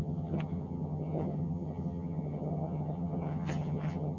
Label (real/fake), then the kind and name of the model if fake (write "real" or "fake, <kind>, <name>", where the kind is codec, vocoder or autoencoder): fake, vocoder, HiFi-GAN